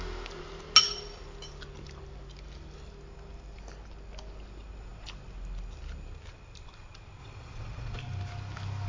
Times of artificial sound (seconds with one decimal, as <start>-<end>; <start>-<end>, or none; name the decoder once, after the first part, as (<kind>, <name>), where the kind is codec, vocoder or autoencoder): 7.2-8.0 (vocoder, Vocos)